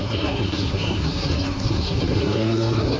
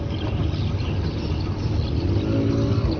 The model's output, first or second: first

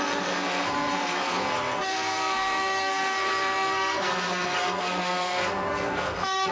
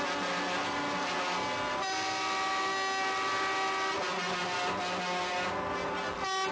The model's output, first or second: first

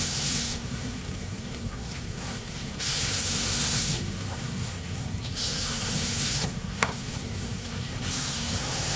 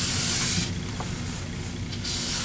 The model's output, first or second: first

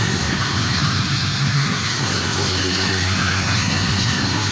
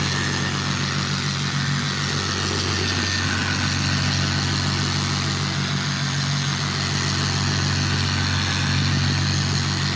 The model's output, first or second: first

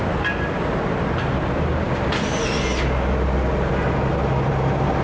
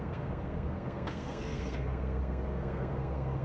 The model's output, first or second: second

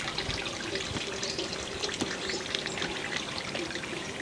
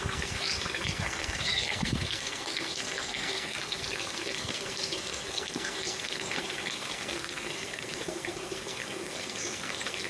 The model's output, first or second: second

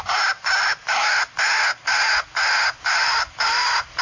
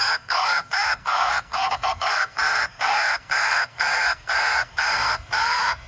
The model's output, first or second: second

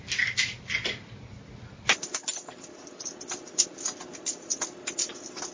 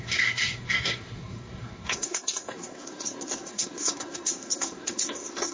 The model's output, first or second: second